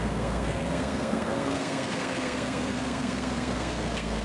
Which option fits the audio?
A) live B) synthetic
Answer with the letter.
B